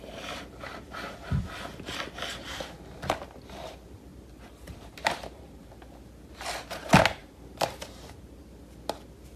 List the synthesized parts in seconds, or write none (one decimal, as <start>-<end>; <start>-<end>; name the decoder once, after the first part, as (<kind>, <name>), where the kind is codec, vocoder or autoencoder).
4.1-5.7 (vocoder, BigVGAN v2); 7.2-8.2